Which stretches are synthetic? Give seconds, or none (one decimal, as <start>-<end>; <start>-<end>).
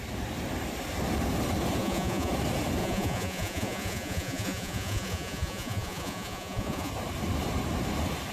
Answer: 1.8-2.3; 2.8-6.9